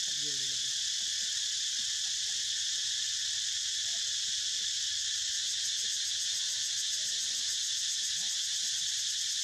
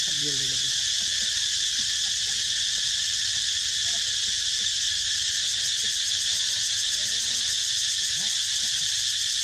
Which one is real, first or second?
first